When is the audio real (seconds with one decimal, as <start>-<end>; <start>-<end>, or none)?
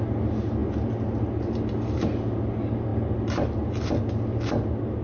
0.0-5.0